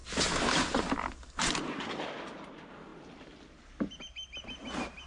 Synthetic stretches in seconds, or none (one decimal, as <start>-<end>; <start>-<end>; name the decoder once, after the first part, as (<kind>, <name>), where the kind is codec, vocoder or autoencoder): none